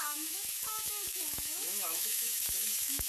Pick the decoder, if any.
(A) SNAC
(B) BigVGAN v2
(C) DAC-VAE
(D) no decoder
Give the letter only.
C